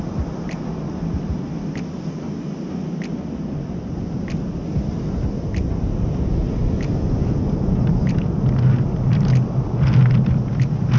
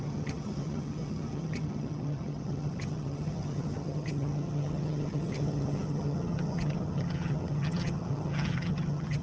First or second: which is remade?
second